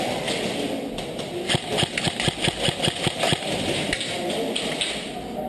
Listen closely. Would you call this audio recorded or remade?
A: recorded